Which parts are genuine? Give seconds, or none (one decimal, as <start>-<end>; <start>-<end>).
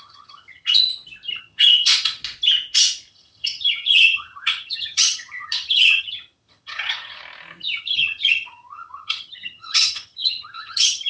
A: 0.9-1.4; 2.2-3.1; 7.2-7.8